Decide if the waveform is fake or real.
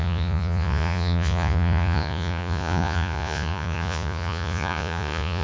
fake